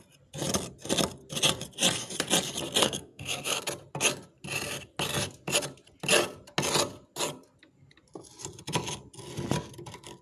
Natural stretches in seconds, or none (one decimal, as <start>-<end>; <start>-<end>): 0.0-2.8; 3.6-10.2